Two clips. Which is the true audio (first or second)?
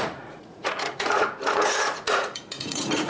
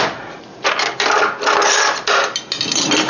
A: second